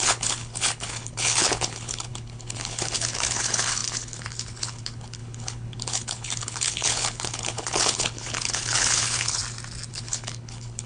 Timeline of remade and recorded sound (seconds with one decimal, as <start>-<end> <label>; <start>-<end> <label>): 0.0-9.4 remade; 9.4-9.9 recorded; 9.9-10.9 remade